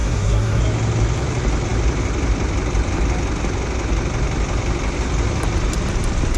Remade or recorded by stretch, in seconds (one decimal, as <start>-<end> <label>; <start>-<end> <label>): 0.0-0.6 remade; 0.6-6.4 recorded